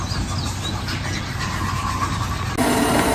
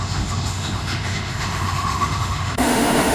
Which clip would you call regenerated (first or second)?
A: second